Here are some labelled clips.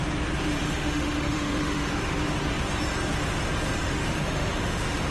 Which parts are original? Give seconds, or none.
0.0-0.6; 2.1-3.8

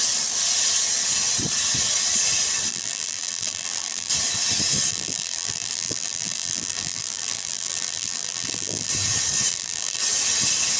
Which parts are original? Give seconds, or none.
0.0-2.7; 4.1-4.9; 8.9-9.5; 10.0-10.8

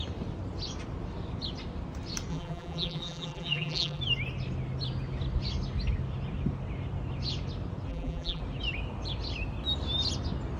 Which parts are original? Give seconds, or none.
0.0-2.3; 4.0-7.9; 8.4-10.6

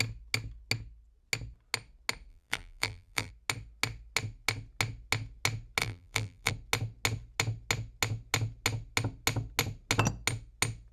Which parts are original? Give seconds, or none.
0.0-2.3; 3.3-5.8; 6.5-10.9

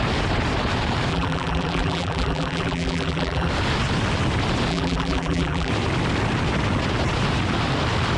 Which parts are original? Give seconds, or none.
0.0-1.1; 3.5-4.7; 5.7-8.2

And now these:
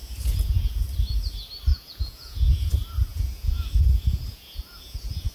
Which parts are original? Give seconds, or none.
0.8-1.7; 2.7-3.1

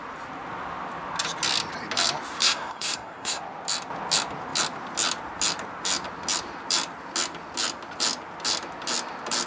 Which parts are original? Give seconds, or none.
0.0-2.4; 3.4-9.5

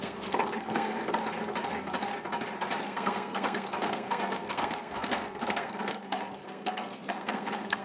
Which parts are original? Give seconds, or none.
1.2-2.8